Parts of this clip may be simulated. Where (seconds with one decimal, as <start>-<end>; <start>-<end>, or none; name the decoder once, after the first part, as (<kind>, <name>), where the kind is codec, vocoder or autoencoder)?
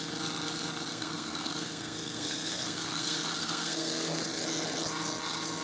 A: 0.9-4.3 (codec, SNAC)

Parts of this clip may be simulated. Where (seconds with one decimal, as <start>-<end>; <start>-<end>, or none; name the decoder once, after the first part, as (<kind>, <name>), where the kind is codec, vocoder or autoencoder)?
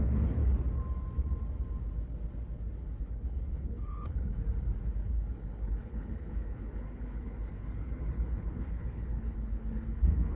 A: 0.0-0.4 (codec, HILCodec); 3.0-4.3; 4.9-10.4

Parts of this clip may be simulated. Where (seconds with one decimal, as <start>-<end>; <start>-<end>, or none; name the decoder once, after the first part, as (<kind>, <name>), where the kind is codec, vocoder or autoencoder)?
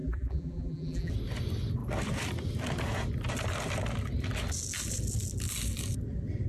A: 0.0-1.1 (vocoder, BigVGAN v2)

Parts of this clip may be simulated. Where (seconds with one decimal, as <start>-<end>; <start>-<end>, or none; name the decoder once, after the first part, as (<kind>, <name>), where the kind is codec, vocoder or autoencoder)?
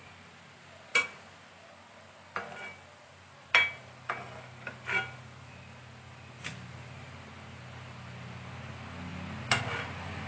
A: none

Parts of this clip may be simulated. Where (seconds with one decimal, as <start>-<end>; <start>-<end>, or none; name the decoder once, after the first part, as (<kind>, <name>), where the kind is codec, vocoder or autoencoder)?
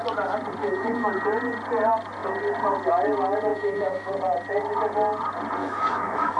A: 0.6-1.1 (autoencoder, DAC-VAE); 3.5-4.1; 5.6-6.4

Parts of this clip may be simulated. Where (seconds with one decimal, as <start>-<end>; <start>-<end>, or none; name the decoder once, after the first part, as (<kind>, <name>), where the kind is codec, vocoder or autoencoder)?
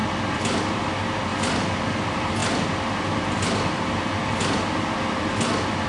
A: none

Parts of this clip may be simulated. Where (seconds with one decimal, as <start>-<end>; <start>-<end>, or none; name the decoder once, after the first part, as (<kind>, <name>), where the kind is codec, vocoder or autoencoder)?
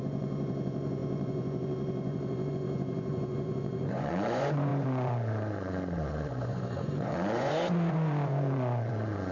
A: 0.0-9.3 (vocoder, Vocos)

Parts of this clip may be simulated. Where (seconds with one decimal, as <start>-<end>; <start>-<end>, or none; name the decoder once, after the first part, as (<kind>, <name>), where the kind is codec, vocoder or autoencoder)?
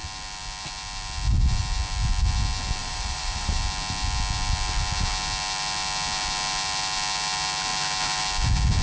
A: 2.8-3.6 (vocoder, BigVGAN v2)